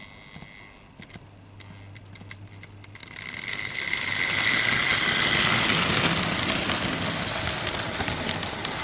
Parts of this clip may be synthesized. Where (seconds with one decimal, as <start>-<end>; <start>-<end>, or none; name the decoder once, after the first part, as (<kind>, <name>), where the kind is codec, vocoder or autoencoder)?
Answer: none